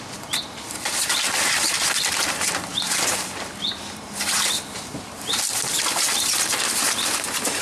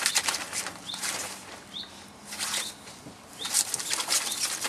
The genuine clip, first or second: second